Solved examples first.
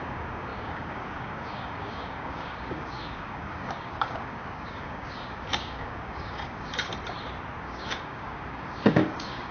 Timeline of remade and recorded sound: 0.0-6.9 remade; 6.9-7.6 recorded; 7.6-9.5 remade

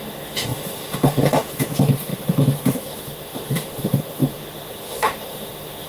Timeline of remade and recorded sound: 0.0-5.9 remade

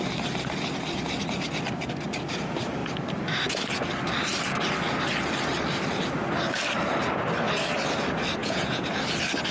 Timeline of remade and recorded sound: 0.0-8.4 recorded; 8.4-9.0 remade; 9.0-9.5 recorded

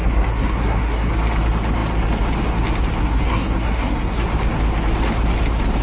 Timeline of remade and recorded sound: 0.0-1.1 remade; 1.1-3.0 recorded; 3.0-4.2 remade; 4.2-5.8 recorded

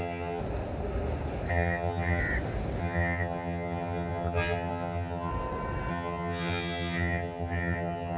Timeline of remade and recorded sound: 0.0-0.4 remade; 0.4-1.5 recorded; 1.5-2.2 remade; 2.2-2.8 recorded; 2.8-5.3 remade; 5.3-5.9 recorded; 5.9-8.2 remade